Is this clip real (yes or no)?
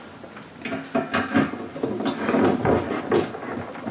yes